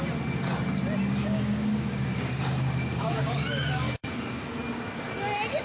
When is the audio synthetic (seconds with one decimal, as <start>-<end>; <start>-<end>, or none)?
1.2-4.6